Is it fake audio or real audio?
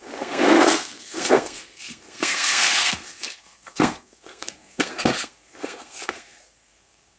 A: fake